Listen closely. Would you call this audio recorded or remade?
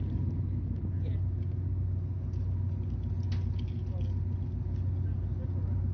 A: recorded